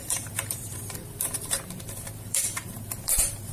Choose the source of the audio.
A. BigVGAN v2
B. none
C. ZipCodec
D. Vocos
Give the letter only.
A